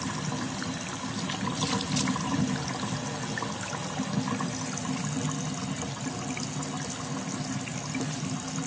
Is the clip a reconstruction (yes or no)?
no